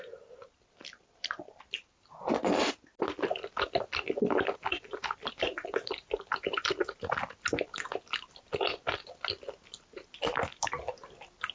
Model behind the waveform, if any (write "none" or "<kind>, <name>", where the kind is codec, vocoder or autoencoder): none